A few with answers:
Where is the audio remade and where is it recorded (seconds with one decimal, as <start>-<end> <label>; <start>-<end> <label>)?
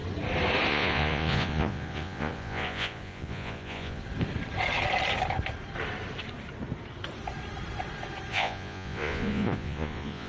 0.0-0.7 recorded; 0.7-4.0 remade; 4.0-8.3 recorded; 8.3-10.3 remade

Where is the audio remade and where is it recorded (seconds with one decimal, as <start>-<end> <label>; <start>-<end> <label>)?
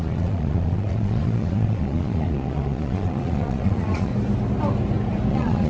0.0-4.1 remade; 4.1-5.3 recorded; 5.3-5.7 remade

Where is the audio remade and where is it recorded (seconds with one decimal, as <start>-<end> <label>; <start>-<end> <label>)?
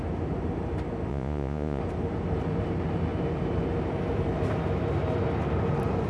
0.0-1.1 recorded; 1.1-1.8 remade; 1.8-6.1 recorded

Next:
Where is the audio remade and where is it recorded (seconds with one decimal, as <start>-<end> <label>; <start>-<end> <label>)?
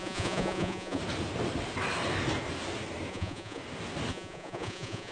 0.0-1.0 remade; 1.0-3.1 recorded; 3.1-3.6 remade; 3.6-4.1 recorded; 4.1-5.1 remade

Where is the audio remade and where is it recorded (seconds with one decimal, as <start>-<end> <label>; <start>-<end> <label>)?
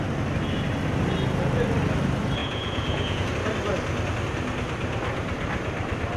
0.0-2.4 recorded; 2.4-3.3 remade; 3.3-6.2 recorded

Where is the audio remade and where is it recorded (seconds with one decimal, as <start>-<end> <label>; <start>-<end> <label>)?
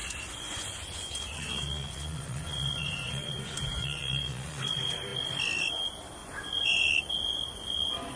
0.0-4.6 remade; 4.6-6.2 recorded; 6.2-8.2 remade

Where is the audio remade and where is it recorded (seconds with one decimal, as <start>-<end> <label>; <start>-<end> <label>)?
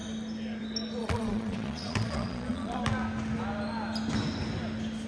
0.0-1.0 recorded; 1.0-2.8 remade; 2.8-5.1 recorded